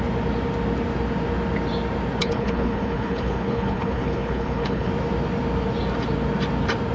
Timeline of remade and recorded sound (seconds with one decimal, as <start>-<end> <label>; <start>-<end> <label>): 0.0-2.2 recorded; 2.2-4.9 remade; 4.9-6.9 recorded